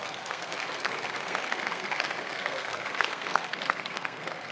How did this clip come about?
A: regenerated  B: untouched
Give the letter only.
A